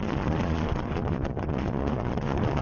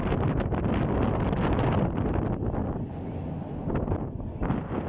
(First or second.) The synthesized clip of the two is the first